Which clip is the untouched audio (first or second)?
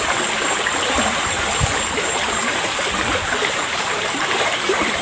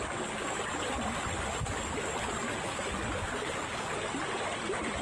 second